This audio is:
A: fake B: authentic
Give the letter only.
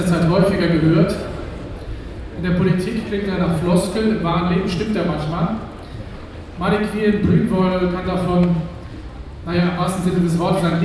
B